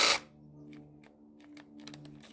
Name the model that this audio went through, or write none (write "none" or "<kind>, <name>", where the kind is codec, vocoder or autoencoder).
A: none